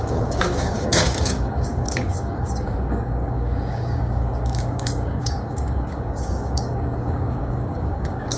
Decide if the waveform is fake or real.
fake